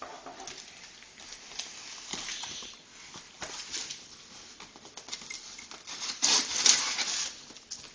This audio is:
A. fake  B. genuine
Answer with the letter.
B